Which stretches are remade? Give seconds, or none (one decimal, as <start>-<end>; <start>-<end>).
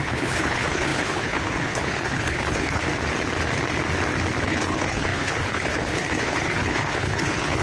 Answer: 0.0-2.9; 4.4-7.6